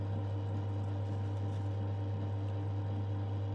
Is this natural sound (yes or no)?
yes